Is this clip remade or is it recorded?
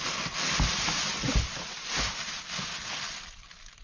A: recorded